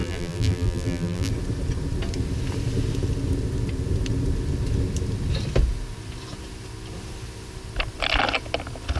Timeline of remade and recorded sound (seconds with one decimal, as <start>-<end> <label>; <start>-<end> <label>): 0.0-1.3 remade; 1.3-9.0 recorded